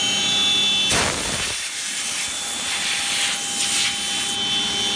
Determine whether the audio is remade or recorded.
recorded